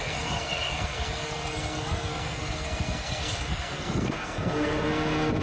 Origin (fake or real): fake